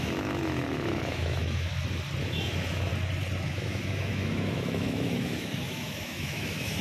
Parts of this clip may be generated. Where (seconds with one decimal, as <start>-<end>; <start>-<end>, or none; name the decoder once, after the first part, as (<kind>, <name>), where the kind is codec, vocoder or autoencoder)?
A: 0.0-1.7 (autoencoder, DAC-VAE); 2.2-2.9; 3.5-6.8